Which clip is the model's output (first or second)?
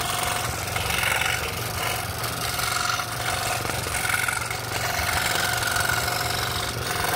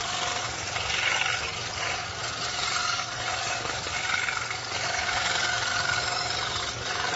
second